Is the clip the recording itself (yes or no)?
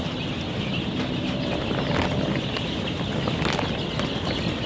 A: yes